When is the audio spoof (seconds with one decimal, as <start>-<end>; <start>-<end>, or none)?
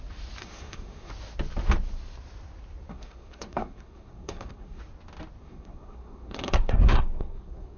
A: 0.4-1.1; 2.9-4.8; 5.4-7.8